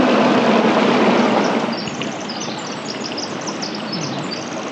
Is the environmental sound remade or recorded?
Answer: recorded